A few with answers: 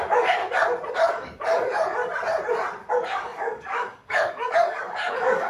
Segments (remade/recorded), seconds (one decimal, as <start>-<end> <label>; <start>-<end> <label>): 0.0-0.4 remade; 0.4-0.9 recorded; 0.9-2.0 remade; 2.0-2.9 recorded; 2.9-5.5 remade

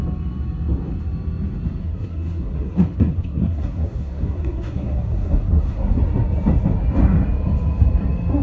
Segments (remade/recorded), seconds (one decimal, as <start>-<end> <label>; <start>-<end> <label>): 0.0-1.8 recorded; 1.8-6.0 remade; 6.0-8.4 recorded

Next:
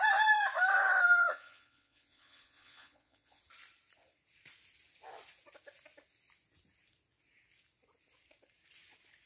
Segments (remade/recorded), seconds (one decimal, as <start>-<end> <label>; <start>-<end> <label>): 0.0-1.2 recorded; 1.2-3.4 remade; 3.4-9.3 recorded

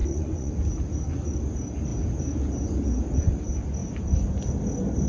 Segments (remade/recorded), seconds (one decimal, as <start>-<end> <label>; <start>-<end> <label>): 0.0-0.5 remade; 0.5-5.1 recorded

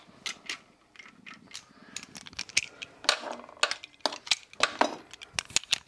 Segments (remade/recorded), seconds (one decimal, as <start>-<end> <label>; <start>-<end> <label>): 0.0-5.9 recorded